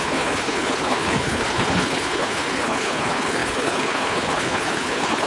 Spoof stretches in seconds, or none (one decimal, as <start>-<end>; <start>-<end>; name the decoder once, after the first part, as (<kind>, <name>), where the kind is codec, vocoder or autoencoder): 0.0-5.3 (codec, HILCodec)